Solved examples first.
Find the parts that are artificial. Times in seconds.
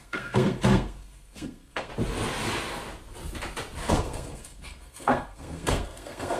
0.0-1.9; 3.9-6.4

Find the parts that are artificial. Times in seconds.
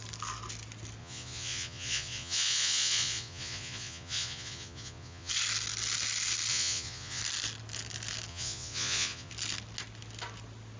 1.0-5.3; 6.5-7.2; 8.3-9.3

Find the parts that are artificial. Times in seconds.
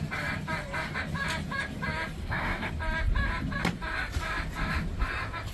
2.2-2.7